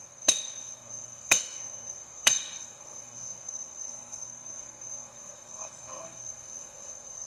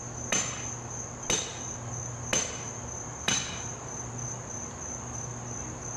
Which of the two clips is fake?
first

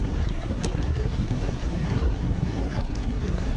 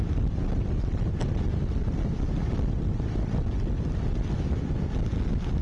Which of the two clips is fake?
first